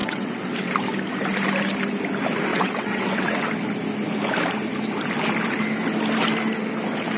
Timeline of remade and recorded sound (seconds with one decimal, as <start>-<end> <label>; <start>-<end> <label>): 0.0-0.7 remade; 0.7-2.5 recorded; 2.5-3.5 remade; 3.5-7.2 recorded